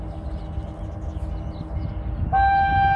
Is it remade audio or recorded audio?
recorded